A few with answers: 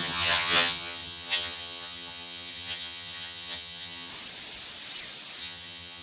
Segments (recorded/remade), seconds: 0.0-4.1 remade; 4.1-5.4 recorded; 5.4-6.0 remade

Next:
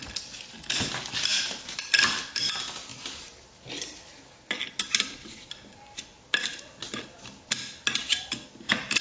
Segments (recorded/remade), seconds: 0.0-9.0 recorded

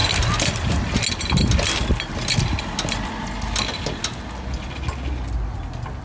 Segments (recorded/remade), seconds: 0.0-6.0 recorded